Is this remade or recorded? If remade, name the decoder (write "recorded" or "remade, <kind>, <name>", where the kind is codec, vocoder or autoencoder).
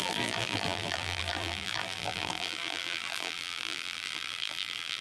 remade, vocoder, BigVGAN v2